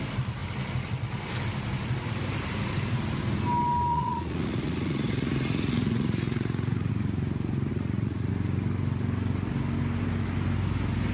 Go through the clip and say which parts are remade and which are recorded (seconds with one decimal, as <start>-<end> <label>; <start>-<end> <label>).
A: 0.0-3.9 recorded; 3.9-6.9 remade; 6.9-7.7 recorded; 7.7-8.3 remade; 8.3-11.1 recorded